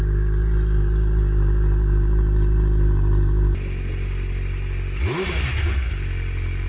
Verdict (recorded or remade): recorded